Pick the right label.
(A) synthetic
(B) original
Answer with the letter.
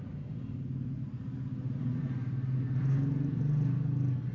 B